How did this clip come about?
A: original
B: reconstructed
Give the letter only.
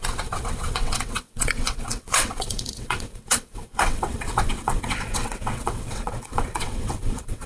B